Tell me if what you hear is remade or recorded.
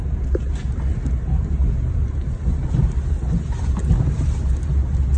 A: recorded